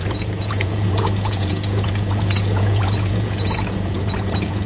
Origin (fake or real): fake